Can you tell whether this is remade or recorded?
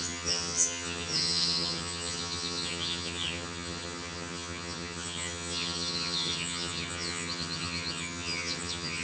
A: remade